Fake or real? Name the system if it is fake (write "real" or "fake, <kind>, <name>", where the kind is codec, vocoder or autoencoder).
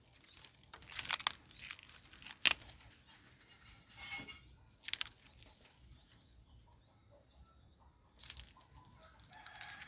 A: real